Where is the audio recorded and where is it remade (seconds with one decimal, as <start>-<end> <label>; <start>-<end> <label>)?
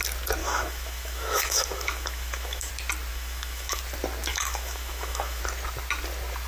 0.0-0.4 recorded; 0.4-2.7 remade; 2.7-3.1 recorded; 3.1-3.8 remade; 3.8-4.3 recorded; 4.3-5.4 remade; 5.4-6.5 recorded